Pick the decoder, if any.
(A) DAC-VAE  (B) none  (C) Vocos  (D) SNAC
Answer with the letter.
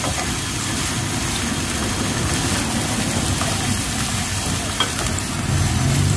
B